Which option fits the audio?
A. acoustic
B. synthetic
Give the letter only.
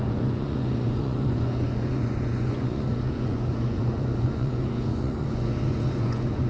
B